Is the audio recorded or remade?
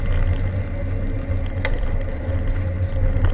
recorded